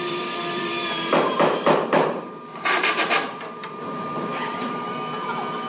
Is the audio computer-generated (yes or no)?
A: yes